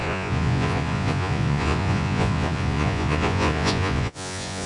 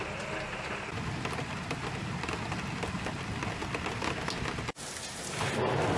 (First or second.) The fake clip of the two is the first